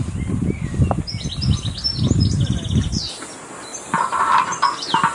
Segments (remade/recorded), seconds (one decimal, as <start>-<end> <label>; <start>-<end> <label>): 0.0-3.7 recorded; 3.7-4.6 remade; 4.6-5.1 recorded